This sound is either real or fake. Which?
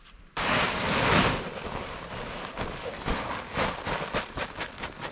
real